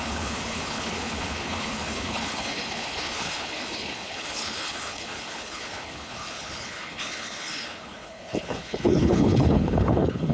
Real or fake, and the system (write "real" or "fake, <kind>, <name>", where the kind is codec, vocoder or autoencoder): fake, codec, HILCodec